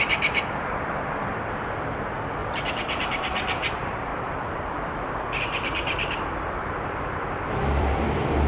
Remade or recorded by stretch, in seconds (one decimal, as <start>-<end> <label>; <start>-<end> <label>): 0.0-8.5 remade